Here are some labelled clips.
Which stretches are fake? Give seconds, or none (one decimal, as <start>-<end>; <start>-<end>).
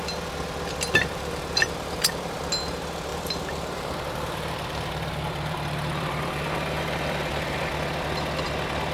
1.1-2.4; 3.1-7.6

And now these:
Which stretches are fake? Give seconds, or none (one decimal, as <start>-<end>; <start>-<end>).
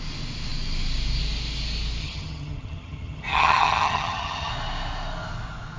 2.0-4.5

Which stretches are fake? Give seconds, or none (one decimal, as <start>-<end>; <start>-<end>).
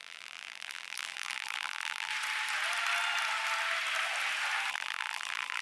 0.0-2.1; 4.7-5.6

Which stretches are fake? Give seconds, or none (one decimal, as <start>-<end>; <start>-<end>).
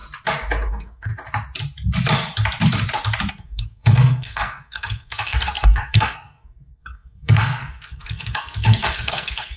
0.7-1.1; 3.3-9.6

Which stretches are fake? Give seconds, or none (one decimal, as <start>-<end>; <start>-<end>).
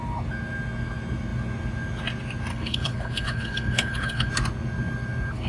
2.5-4.3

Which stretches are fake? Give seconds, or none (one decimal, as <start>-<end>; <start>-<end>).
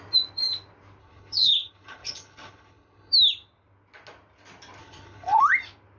1.0-3.1; 4.8-5.4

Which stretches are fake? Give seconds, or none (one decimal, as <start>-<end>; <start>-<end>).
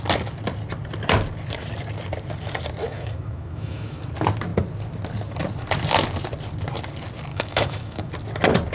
2.8-4.0; 7.3-8.1